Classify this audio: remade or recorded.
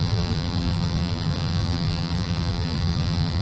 remade